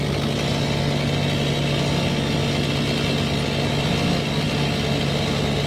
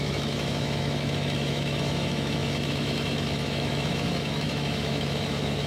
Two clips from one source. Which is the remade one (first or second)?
second